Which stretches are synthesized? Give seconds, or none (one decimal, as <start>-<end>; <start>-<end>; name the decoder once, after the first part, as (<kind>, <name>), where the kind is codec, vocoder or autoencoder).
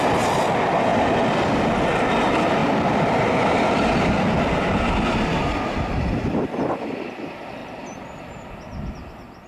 2.6-6.4 (vocoder, BigVGAN v2); 7.6-8.5